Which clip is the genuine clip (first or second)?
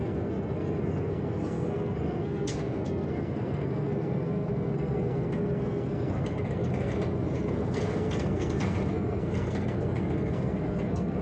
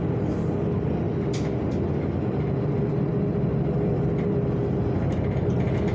second